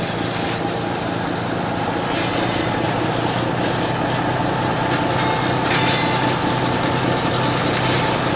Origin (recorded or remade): recorded